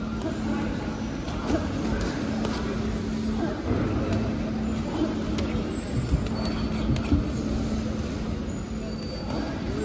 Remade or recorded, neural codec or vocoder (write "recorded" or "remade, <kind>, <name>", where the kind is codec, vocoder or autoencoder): recorded